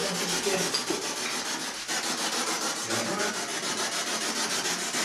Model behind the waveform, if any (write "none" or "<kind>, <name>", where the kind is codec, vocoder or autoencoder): none